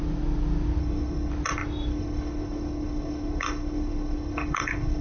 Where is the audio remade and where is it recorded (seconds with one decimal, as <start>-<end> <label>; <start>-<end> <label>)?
0.0-0.8 recorded; 0.8-1.3 remade; 1.3-1.9 recorded; 1.9-5.0 remade

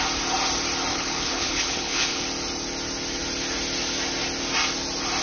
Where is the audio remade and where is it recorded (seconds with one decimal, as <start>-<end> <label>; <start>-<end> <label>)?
0.0-0.9 recorded; 0.9-2.2 remade; 2.2-5.2 recorded